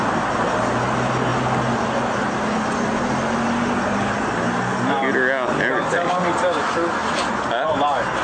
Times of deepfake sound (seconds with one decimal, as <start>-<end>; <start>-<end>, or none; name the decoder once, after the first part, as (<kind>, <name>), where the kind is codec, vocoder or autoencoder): none